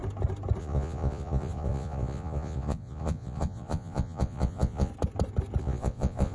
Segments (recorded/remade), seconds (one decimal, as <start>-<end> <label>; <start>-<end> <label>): 0.0-0.6 recorded; 0.6-4.9 remade; 4.9-5.6 recorded; 5.6-6.3 remade